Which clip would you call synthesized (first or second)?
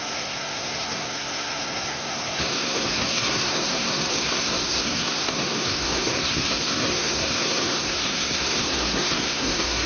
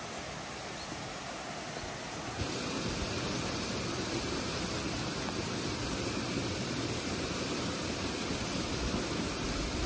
first